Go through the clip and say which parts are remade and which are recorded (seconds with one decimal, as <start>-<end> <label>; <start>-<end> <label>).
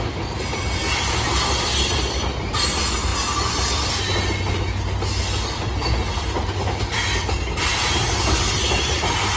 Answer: 0.0-9.4 recorded